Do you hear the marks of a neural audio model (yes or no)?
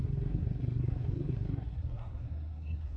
yes